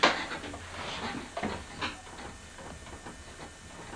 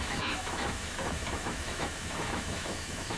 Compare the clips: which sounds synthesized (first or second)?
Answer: second